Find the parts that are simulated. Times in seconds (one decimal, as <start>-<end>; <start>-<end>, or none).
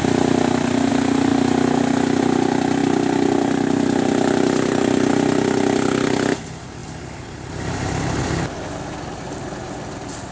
2.8-5.1; 6.8-10.3